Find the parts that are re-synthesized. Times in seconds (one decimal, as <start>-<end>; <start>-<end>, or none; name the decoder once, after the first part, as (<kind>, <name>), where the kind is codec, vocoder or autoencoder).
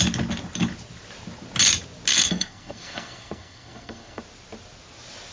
2.1-4.2 (codec, SNAC)